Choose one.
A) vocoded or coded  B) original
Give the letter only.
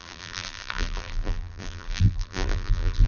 A